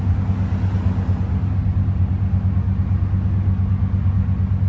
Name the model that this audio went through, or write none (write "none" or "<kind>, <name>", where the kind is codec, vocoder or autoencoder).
none